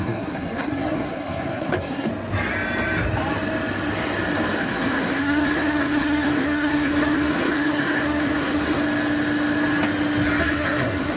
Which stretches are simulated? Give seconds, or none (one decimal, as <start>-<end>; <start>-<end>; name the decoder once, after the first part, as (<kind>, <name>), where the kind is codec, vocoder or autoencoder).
0.0-2.1 (codec, SNAC); 4.6-8.8; 10.4-11.2